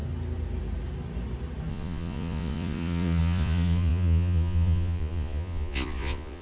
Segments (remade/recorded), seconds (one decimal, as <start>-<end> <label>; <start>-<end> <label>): 0.0-1.7 recorded; 1.7-6.4 remade